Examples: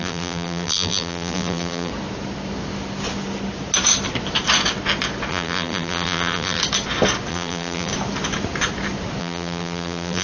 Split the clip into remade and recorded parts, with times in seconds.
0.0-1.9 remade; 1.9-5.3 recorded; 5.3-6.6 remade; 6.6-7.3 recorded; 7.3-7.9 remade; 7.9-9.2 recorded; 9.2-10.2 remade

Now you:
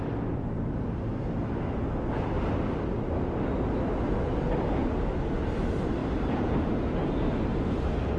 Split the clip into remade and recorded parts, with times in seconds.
0.0-6.0 recorded; 6.0-6.6 remade; 6.6-8.2 recorded

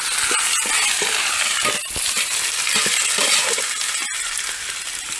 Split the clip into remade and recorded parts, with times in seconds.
0.0-2.9 recorded; 2.9-3.6 remade; 3.6-5.2 recorded

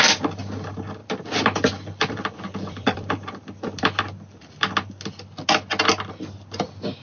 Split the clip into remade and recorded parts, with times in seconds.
0.0-1.0 recorded; 1.0-4.0 remade; 4.0-7.0 recorded

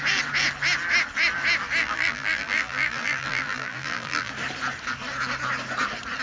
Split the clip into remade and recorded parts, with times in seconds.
0.0-1.8 recorded; 1.8-4.3 remade; 4.3-6.2 recorded